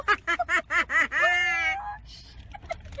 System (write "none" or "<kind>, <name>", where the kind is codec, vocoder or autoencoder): none